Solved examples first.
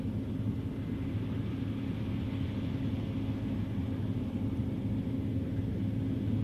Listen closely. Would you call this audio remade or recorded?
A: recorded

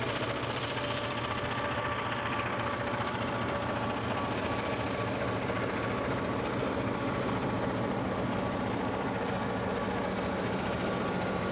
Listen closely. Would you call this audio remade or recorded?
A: recorded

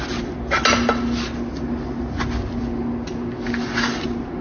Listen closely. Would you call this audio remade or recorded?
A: recorded